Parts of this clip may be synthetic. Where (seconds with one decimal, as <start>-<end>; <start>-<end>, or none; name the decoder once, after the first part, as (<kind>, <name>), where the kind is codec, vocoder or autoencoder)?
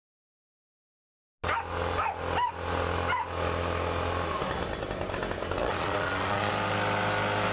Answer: 5.6-6.5 (vocoder, Vocos)